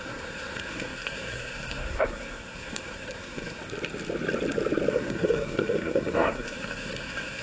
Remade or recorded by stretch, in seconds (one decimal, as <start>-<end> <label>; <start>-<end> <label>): 0.0-3.6 remade; 3.6-4.9 recorded; 4.9-7.4 remade